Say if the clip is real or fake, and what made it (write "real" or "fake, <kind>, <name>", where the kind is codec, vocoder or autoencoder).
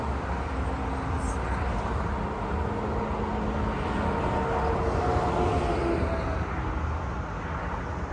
real